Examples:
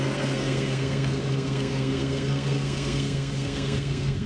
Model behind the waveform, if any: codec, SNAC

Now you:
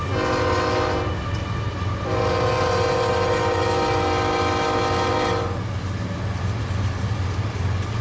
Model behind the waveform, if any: none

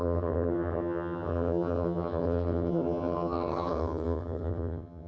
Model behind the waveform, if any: vocoder, HiFi-GAN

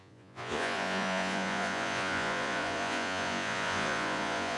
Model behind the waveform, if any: vocoder, Vocos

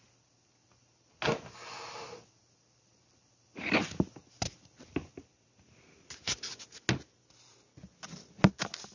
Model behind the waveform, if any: none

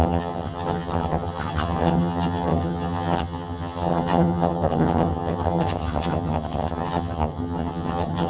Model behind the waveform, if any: vocoder, HiFi-GAN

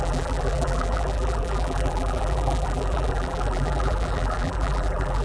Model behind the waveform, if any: vocoder, BigVGAN v2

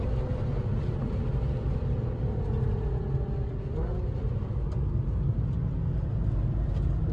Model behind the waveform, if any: none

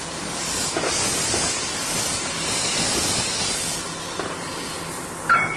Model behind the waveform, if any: none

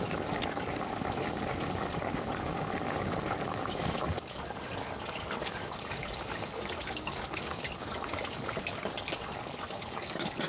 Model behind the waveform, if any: codec, DAC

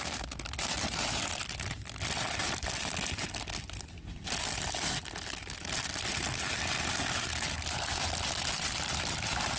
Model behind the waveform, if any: none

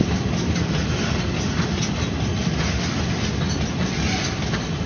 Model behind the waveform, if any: none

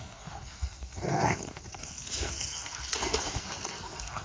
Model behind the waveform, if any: codec, SNAC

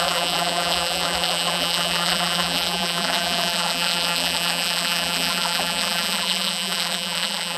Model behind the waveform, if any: vocoder, BigVGAN v2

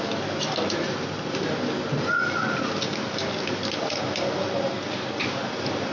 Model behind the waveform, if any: none